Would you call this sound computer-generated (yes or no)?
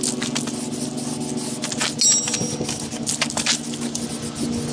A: no